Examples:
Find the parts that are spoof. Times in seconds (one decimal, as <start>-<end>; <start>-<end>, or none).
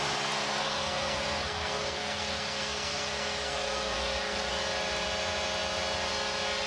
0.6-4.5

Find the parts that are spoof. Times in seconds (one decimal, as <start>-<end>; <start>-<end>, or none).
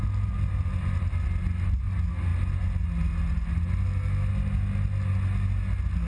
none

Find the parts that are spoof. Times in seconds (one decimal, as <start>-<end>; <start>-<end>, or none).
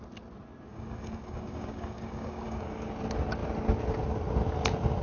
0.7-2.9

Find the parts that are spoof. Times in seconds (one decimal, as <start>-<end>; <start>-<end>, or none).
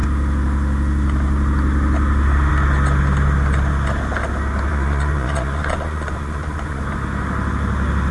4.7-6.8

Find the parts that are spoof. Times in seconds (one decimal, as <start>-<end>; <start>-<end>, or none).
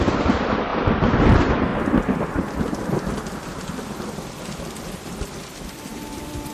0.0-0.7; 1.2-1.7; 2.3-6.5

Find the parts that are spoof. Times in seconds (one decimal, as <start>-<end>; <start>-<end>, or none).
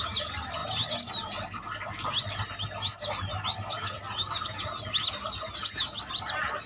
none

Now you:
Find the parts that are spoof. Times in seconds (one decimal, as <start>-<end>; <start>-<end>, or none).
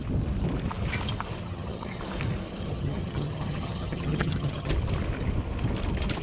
1.4-2.0; 2.6-4.7